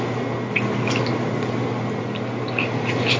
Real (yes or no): yes